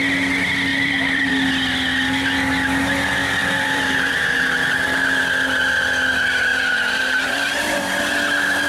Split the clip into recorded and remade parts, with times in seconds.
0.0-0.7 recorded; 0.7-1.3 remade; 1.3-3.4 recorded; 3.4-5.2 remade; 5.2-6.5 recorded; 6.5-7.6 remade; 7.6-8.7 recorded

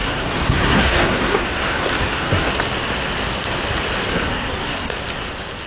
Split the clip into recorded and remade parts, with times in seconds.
0.0-2.5 remade; 2.5-4.1 recorded; 4.1-4.9 remade; 4.9-5.7 recorded